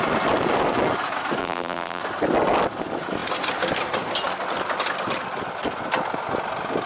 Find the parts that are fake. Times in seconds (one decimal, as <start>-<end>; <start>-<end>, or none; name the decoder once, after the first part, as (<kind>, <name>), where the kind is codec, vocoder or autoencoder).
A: 1.4-2.0 (vocoder, BigVGAN v2)